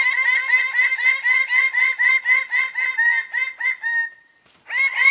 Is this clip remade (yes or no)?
no